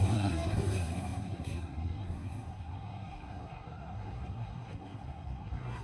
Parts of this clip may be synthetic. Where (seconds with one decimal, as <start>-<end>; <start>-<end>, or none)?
0.0-5.8